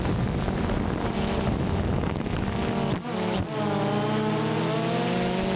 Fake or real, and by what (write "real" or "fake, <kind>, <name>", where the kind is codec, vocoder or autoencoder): real